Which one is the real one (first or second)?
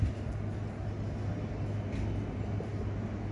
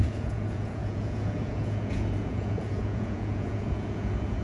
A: first